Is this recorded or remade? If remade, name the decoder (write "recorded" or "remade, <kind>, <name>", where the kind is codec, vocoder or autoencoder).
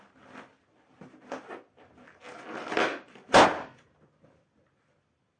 recorded